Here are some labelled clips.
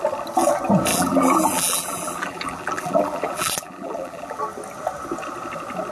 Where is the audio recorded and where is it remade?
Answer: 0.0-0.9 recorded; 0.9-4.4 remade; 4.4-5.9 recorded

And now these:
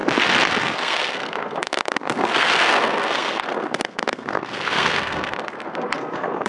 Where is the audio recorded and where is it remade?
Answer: 0.0-0.6 recorded; 0.6-6.5 remade

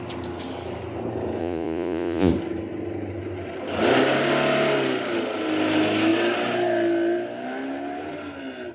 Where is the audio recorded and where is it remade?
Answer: 0.0-1.4 recorded; 1.4-2.3 remade; 2.3-8.7 recorded

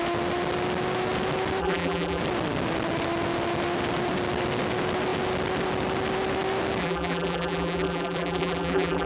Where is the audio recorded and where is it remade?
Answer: 0.0-1.6 recorded; 1.6-2.2 remade; 2.2-6.8 recorded; 6.8-9.1 remade

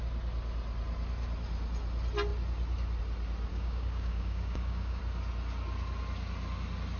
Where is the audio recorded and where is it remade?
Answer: 0.0-3.5 recorded; 3.5-5.0 remade; 5.0-7.0 recorded

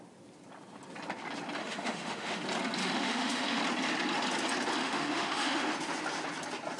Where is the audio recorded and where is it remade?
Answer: 0.0-1.6 recorded; 1.6-2.4 remade; 2.4-2.8 recorded; 2.8-3.6 remade; 3.6-4.8 recorded; 4.8-5.7 remade; 5.7-6.8 recorded